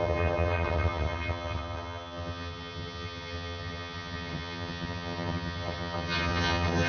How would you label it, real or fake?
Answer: fake